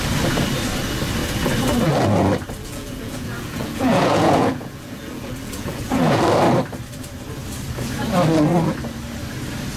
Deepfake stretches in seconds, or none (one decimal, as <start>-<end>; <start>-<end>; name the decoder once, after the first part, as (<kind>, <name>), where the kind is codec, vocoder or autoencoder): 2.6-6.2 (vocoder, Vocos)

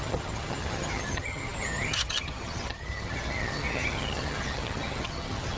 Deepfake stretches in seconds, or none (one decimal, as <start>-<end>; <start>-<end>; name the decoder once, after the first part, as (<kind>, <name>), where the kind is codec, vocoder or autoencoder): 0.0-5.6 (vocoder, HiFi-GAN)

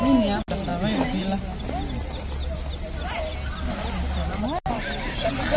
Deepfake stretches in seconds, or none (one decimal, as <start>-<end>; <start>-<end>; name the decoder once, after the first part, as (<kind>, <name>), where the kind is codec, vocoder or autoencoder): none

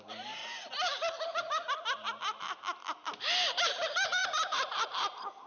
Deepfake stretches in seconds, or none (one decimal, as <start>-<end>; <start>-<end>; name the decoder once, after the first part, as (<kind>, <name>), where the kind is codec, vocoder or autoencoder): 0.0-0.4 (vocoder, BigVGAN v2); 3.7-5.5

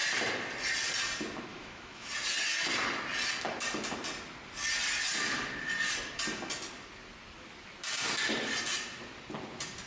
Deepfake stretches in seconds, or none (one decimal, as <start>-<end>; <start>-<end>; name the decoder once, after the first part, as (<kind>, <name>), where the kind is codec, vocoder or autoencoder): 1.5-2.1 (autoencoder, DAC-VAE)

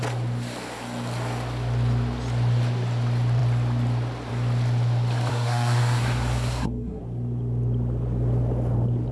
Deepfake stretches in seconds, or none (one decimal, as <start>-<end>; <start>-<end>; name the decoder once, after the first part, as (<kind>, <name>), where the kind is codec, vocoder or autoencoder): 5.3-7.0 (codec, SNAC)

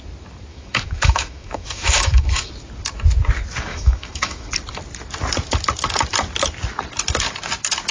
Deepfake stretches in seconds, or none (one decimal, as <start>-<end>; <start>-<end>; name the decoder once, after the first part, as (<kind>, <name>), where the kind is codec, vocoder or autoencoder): 0.5-2.5 (autoencoder, DAC-VAE); 3.7-4.5